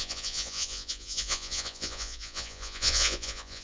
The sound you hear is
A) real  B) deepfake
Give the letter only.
B